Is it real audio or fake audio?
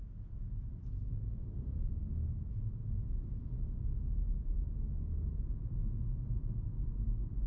fake